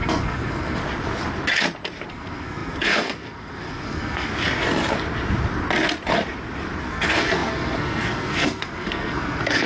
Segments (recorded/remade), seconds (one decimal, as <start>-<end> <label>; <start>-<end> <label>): 0.0-0.8 remade; 0.8-2.1 recorded; 2.1-4.3 remade; 4.3-6.8 recorded; 6.8-9.7 remade